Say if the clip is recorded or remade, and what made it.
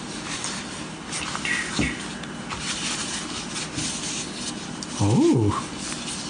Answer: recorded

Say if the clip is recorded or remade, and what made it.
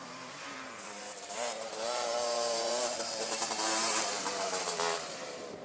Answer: remade, vocoder, BigVGAN v2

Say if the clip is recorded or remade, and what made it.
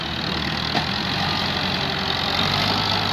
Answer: recorded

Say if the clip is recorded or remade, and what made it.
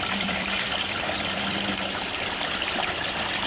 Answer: remade, vocoder, BigVGAN v2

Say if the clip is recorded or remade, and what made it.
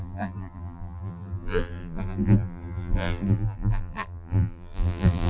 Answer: remade, vocoder, BigVGAN v2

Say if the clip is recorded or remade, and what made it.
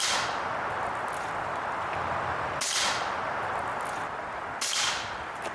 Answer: recorded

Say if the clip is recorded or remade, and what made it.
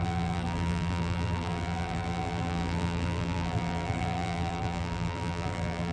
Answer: remade, vocoder, BigVGAN v2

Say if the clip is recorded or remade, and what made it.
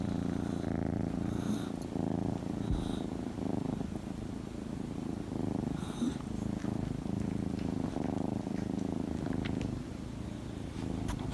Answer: recorded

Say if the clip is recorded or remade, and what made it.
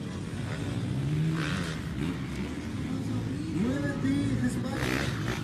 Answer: recorded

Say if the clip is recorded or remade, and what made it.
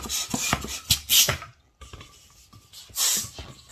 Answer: recorded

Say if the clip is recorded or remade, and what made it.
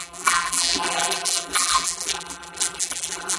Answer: remade, vocoder, BigVGAN v2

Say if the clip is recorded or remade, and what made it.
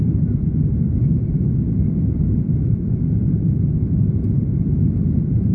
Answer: remade, vocoder, BigVGAN v2